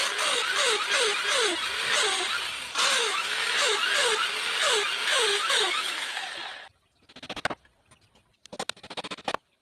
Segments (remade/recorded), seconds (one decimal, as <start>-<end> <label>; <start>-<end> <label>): 0.0-3.0 recorded; 3.0-3.9 remade; 3.9-5.1 recorded; 5.1-6.3 remade; 6.3-9.6 recorded